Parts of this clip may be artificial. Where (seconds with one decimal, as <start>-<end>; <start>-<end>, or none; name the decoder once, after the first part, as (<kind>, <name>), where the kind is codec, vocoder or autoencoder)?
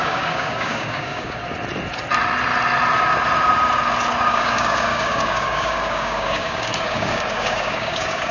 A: 0.0-1.4 (codec, DAC); 4.3-8.3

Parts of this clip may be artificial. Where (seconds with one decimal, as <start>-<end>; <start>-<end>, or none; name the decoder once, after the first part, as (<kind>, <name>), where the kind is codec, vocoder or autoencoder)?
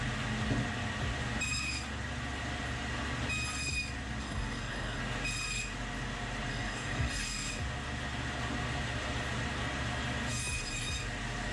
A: 4.2-5.0 (codec, DAC); 6.5-7.5